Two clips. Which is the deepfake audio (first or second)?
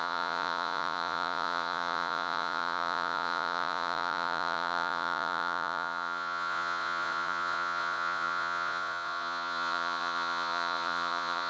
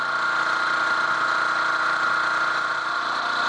first